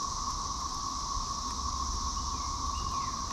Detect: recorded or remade recorded